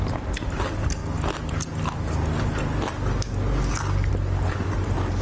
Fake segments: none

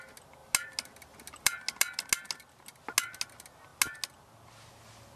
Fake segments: none

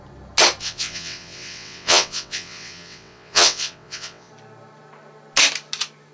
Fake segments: 0.6-4.3 (vocoder, WaveNeXt)

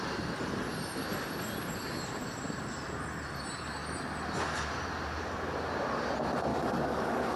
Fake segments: 6.5-7.4 (codec, DAC)

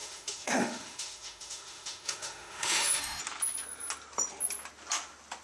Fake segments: 0.0-3.2 (autoencoder, DAC-VAE)